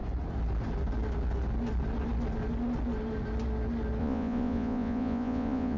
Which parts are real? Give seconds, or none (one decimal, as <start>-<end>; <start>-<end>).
0.0-4.0